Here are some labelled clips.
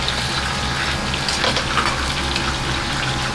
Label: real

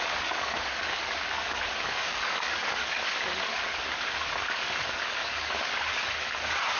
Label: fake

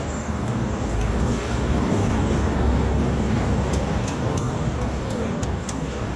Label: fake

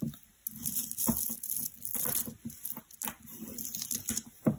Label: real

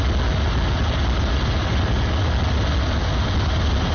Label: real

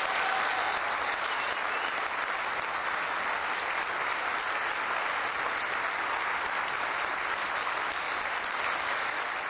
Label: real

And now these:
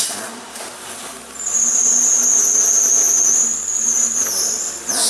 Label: real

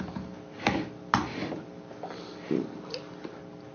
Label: real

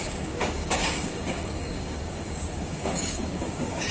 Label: fake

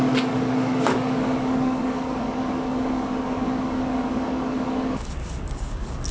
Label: fake